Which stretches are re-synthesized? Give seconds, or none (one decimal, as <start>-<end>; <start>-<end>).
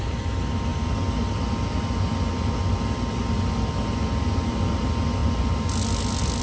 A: none